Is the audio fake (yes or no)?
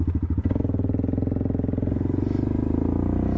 no